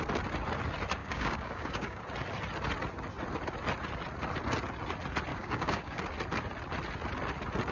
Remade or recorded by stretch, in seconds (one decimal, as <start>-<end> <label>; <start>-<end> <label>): 0.0-1.0 recorded; 1.0-2.0 remade; 2.0-5.3 recorded; 5.3-6.0 remade; 6.0-7.7 recorded